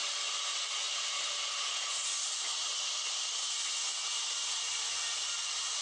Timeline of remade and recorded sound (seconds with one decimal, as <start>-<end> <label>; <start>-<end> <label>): 0.0-5.8 recorded